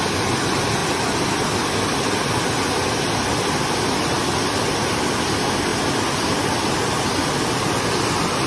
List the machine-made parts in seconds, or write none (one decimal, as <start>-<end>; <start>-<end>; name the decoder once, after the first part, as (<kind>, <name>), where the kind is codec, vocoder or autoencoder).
none